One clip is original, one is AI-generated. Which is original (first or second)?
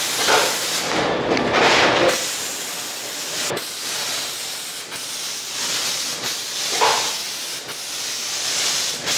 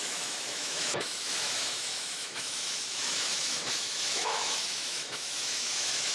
first